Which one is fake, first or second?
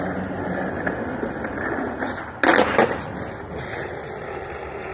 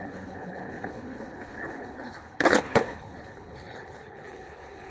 second